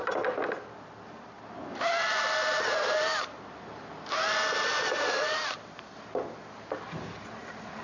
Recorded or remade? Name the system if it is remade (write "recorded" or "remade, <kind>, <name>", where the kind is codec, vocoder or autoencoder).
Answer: recorded